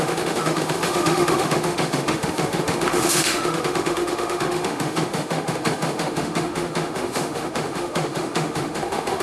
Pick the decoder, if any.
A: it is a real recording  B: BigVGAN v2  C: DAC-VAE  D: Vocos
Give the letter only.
C